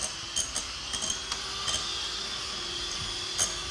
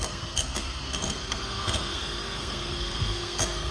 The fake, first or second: second